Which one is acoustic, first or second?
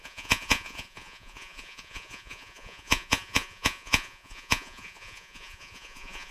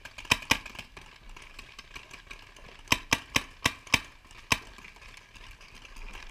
second